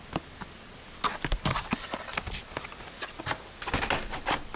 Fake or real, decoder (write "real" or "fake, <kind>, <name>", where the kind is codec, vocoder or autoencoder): real